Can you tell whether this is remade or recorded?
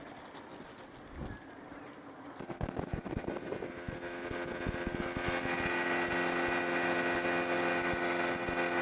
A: recorded